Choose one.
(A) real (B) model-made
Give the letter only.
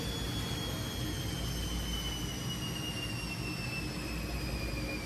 A